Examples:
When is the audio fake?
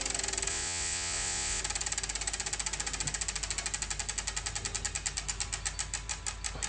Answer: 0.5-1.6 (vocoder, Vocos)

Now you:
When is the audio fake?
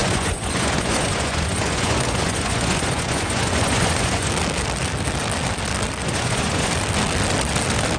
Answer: 0.0-4.3 (vocoder, Vocos); 6.0-6.7